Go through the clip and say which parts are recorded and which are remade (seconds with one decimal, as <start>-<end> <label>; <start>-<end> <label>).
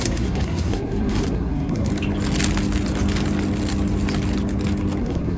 0.0-1.9 remade; 1.9-5.0 recorded; 5.0-5.4 remade